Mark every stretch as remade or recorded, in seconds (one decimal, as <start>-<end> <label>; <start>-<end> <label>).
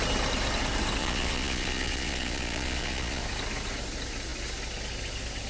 0.0-1.0 recorded; 1.0-3.2 remade; 3.2-5.5 recorded